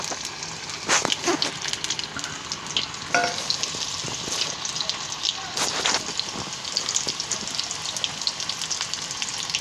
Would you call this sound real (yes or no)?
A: yes